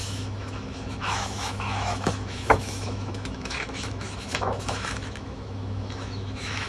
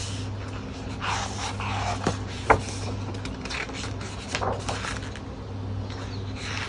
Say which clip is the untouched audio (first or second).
second